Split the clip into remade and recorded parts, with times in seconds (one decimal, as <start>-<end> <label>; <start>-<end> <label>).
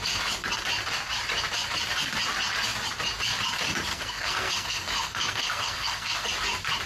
0.0-3.9 recorded; 3.9-6.3 remade; 6.3-6.9 recorded